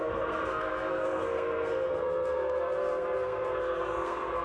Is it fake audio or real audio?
fake